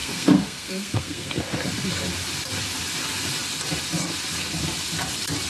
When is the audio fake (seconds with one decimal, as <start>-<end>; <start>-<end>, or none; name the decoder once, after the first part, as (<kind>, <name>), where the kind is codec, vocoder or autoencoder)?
0.0-1.4 (codec, SNAC)